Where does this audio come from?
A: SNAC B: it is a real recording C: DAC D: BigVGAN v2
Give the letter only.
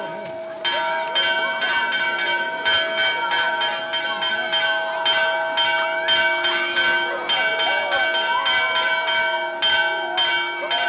B